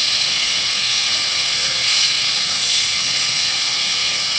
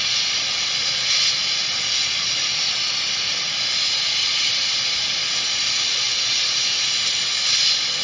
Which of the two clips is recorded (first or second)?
second